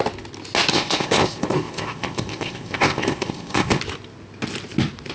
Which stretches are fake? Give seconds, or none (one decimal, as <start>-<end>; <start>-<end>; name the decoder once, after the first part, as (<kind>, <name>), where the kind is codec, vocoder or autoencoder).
0.7-3.8 (codec, ZipCodec)